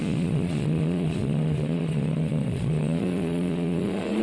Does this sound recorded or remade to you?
remade